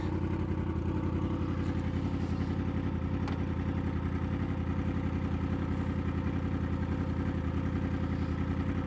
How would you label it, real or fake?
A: real